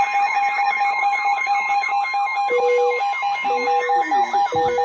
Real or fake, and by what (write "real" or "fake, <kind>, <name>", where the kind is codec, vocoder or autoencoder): fake, autoencoder, DAC-VAE